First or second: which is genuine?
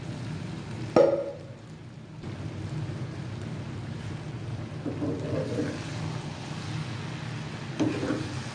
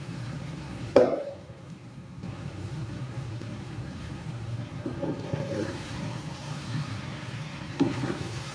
first